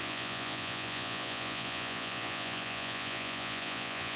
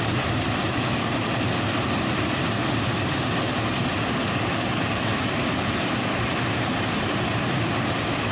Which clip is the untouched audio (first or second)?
second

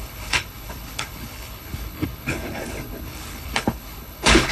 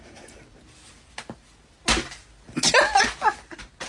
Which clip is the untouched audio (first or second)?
second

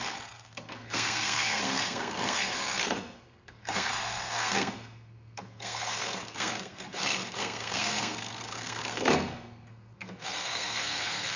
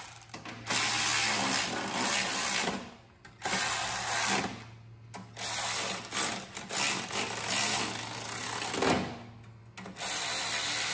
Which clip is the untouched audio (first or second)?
second